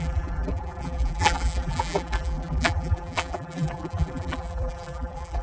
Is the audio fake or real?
fake